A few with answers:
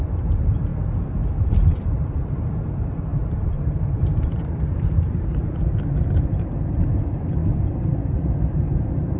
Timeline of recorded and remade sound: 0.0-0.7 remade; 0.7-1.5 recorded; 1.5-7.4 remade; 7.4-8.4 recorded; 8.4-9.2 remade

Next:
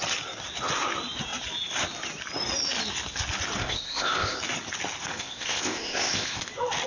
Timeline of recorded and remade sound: 0.0-3.6 recorded; 3.6-4.4 remade; 4.4-5.1 recorded; 5.1-6.5 remade; 6.5-6.9 recorded

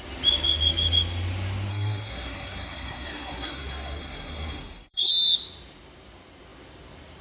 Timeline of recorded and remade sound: 0.0-1.7 recorded; 1.7-5.1 remade; 5.1-7.2 recorded